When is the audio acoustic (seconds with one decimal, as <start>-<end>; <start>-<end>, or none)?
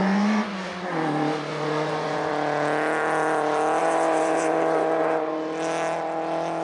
0.7-1.5; 2.3-3.8; 5.3-6.6